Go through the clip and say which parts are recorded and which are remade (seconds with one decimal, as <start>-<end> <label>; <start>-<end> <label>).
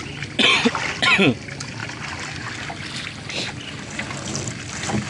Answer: 0.0-5.1 recorded